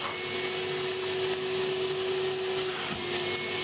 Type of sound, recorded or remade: recorded